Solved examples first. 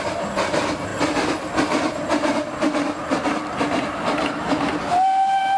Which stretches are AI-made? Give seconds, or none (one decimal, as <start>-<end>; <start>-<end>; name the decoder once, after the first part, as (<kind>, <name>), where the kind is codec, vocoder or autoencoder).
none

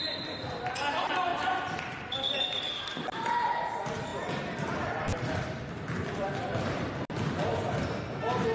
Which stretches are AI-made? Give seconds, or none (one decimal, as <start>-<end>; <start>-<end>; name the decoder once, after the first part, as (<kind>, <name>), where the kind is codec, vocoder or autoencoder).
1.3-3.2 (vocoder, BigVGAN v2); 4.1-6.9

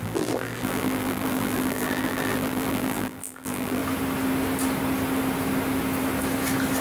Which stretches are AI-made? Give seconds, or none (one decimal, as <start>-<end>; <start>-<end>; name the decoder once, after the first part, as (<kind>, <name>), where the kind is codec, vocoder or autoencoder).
0.0-3.8 (vocoder, BigVGAN v2)

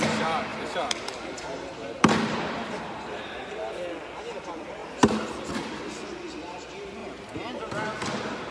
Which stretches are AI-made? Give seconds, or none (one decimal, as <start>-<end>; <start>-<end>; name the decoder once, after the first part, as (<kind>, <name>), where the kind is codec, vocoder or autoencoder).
0.5-3.2 (vocoder, BigVGAN v2); 7.0-7.6

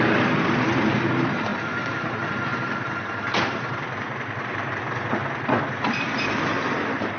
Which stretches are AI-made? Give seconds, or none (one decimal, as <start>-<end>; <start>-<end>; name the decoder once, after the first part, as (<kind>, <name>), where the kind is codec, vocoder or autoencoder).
0.0-5.2 (vocoder, BigVGAN v2); 5.9-7.2